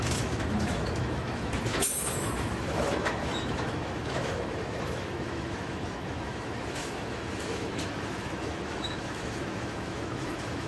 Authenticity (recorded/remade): remade